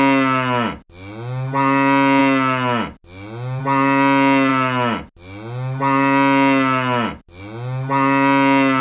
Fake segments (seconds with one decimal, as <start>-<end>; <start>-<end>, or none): none